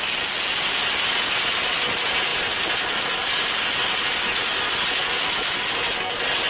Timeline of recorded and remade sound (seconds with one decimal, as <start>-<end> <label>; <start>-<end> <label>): 0.0-6.5 recorded